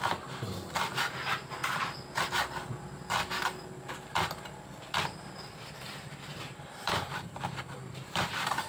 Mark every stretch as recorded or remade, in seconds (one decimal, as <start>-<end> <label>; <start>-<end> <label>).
0.0-1.6 remade; 1.6-5.8 recorded; 5.8-8.7 remade